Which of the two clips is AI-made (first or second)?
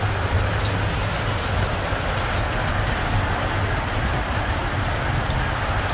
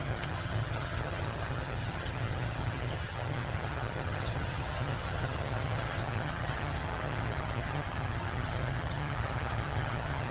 second